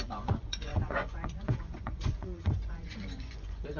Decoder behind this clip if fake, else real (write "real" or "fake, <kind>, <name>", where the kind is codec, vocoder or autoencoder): fake, vocoder, Vocos